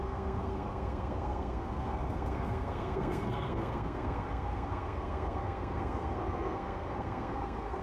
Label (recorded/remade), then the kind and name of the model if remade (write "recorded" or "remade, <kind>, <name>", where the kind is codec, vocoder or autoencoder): remade, codec, SNAC